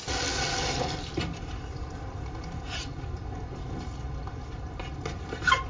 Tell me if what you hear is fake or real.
real